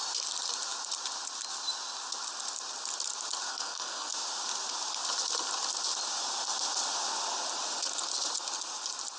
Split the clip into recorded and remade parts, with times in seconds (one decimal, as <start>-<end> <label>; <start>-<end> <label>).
0.0-3.5 recorded; 3.5-4.1 remade; 4.1-9.2 recorded